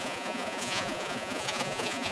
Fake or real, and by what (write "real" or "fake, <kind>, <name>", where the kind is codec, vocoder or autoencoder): fake, vocoder, Vocos